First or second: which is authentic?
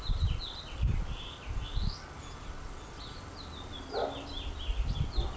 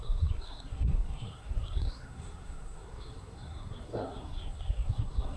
first